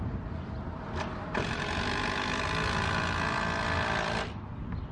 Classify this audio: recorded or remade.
recorded